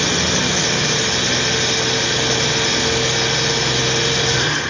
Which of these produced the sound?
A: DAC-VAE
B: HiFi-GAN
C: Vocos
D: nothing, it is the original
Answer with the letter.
D